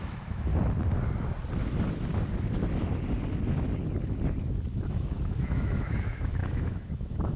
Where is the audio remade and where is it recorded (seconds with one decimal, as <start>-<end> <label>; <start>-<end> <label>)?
0.0-0.5 remade; 0.5-4.9 recorded; 4.9-7.4 remade